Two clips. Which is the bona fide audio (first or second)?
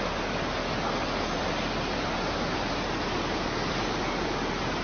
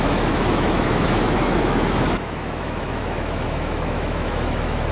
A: first